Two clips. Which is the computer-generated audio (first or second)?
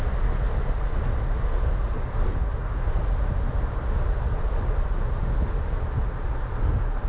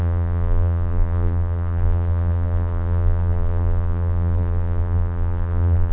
second